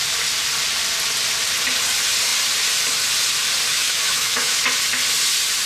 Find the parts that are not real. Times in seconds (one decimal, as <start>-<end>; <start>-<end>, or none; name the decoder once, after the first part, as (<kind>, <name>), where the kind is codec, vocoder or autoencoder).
3.7-4.6 (autoencoder, DAC-VAE)